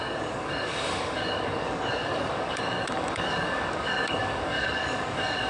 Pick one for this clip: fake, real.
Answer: fake